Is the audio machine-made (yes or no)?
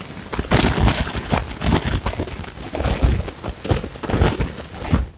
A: no